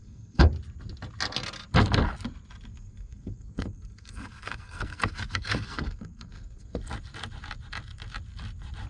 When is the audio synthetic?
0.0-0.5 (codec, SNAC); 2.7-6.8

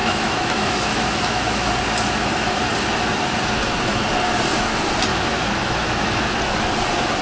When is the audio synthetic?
0.0-1.7 (autoencoder, DAC-VAE); 5.1-6.2

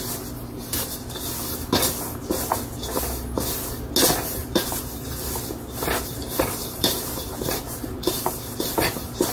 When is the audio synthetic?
4.4-9.3 (vocoder, BigVGAN v2)

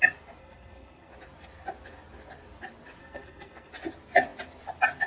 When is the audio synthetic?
0.4-1.1 (codec, SNAC); 3.0-3.7

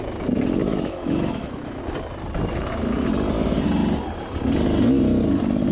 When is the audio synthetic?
0.6-1.8 (autoencoder, DAC-VAE)

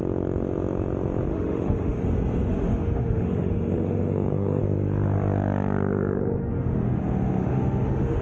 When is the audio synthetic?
1.3-2.0 (autoencoder, DAC-VAE); 2.5-4.6; 6.4-7.0; 7.4-8.2